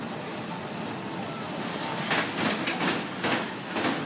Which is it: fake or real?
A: real